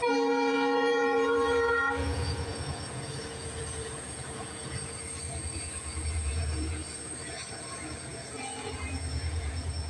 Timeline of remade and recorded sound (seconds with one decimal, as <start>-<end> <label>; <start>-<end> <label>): 0.0-9.9 remade